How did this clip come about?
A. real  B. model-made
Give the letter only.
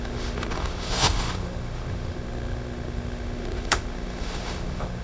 B